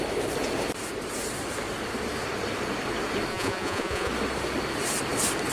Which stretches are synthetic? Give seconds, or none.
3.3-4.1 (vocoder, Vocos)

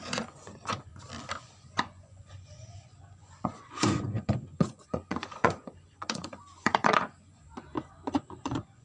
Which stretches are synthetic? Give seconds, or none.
0.0-0.9 (vocoder, Vocos); 1.4-8.8